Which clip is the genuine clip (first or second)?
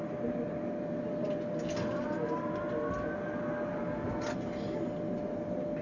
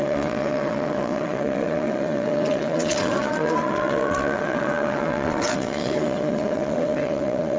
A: first